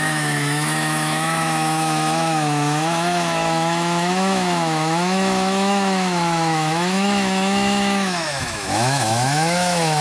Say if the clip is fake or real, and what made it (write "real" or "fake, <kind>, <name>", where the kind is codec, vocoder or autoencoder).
fake, autoencoder, DAC-VAE